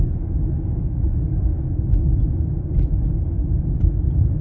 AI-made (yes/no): yes